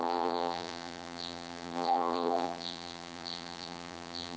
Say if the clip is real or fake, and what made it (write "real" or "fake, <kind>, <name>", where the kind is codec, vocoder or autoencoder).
fake, vocoder, BigVGAN v2